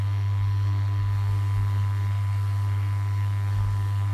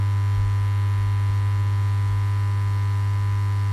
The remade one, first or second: first